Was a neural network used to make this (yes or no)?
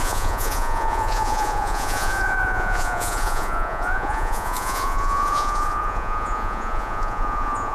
yes